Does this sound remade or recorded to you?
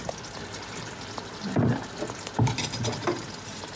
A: recorded